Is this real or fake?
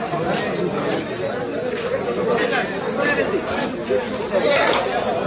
real